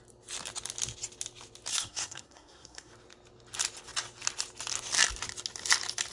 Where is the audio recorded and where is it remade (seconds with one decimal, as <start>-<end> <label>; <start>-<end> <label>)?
0.0-1.7 recorded; 1.7-2.9 remade; 2.9-6.1 recorded